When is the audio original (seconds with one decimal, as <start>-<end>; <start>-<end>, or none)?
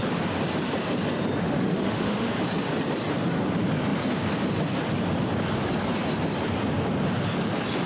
0.0-1.4; 2.3-7.9